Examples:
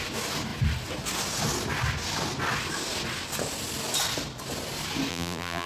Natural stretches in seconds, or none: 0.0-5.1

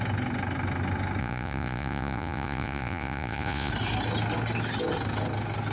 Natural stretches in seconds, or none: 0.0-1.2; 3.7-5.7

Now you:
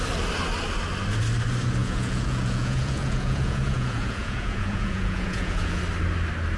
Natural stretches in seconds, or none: 0.0-1.8; 5.8-6.6